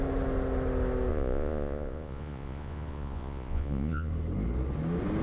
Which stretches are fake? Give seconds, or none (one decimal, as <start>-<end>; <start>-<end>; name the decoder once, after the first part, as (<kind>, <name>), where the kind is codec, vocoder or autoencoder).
1.1-4.1 (vocoder, Vocos)